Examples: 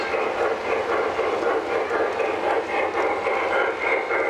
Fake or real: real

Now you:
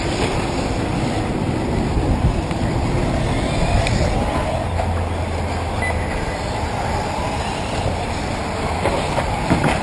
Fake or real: real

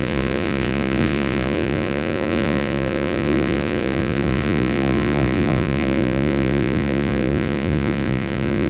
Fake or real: fake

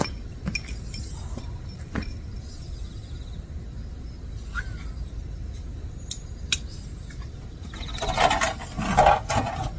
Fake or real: real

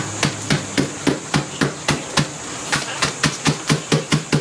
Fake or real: real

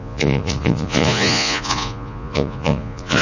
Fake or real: fake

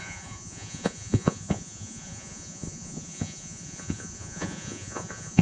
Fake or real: fake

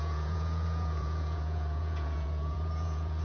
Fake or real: fake